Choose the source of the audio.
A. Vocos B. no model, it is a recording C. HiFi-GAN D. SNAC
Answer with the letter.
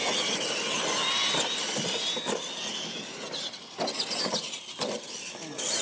B